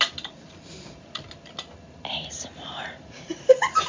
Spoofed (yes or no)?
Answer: no